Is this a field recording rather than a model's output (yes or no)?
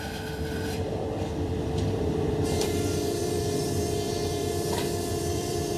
no